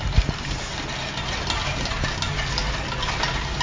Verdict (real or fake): real